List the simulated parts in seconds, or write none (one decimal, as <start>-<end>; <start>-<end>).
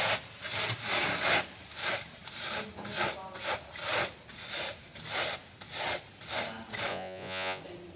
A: 6.9-7.6